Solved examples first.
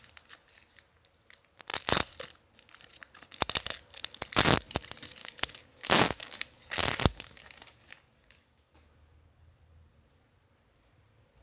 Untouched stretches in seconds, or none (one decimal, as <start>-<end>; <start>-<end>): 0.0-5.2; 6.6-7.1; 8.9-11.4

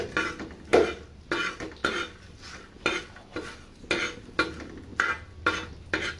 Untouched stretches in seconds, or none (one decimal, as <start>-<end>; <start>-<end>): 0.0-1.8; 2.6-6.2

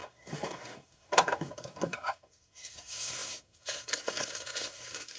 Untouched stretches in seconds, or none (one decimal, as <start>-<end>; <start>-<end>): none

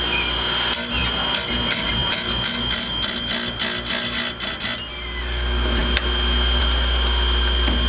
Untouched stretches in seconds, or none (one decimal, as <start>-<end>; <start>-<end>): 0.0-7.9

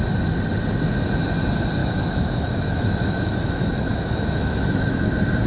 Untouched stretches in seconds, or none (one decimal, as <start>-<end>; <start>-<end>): 0.0-1.8; 5.1-5.5

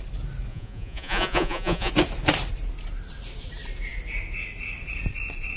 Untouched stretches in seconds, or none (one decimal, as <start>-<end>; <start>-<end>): 0.0-0.5; 1.9-5.6